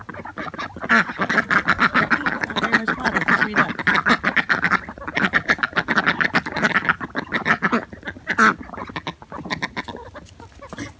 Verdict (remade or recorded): recorded